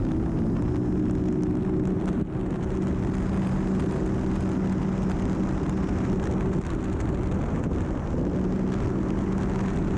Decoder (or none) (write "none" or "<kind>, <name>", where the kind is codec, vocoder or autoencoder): none